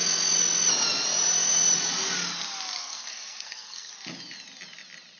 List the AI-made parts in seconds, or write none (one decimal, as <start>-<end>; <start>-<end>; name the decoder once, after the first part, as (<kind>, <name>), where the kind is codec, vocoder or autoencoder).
2.8-3.9 (codec, SNAC)